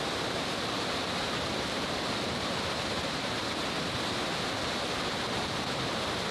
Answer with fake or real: real